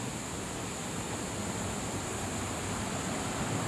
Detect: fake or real real